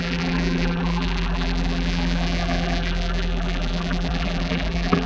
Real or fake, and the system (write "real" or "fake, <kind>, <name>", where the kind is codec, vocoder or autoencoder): fake, vocoder, BigVGAN v2